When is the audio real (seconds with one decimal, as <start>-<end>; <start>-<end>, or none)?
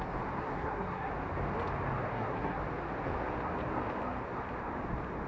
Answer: 0.0-0.4; 1.1-2.1; 2.6-5.3